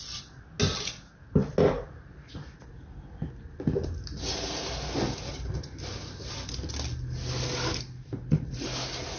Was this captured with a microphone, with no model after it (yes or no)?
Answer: yes